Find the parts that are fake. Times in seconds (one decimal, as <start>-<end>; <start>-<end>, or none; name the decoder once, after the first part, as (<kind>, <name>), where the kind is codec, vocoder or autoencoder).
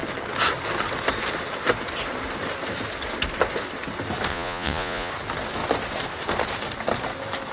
4.3-5.1 (vocoder, Vocos)